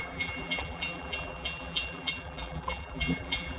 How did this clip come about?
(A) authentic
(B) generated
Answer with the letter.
B